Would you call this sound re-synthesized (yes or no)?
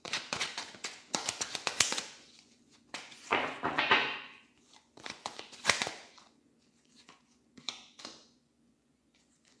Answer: yes